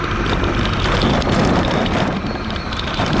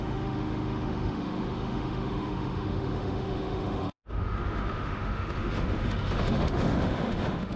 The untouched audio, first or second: first